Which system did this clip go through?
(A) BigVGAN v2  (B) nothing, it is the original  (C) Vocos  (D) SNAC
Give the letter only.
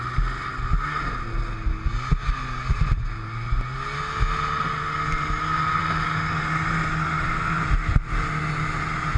B